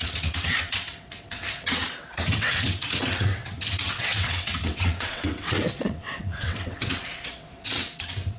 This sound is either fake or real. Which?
fake